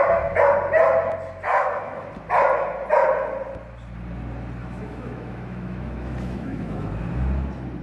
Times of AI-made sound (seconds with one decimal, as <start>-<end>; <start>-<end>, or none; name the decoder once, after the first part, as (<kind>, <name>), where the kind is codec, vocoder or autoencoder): 1.5-2.0 (autoencoder, DAC-VAE); 4.6-6.9